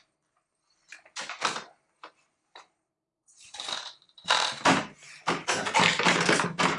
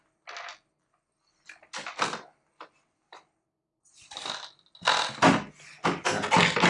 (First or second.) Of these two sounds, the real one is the second